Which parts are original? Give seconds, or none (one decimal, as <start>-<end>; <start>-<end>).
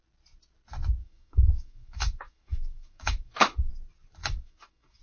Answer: 0.0-1.0; 3.7-4.2